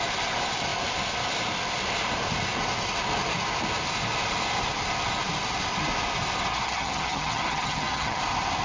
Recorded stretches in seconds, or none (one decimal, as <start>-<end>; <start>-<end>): 0.0-6.5; 8.2-8.6